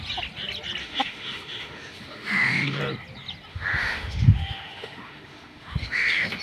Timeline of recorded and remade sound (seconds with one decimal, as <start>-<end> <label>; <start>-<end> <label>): 0.0-0.8 recorded; 0.8-2.8 remade; 2.8-3.5 recorded; 3.5-6.4 remade